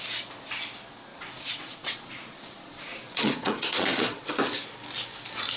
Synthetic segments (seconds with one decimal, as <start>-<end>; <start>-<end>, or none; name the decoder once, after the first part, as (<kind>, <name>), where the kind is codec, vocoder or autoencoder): 1.1-4.3 (vocoder, Vocos)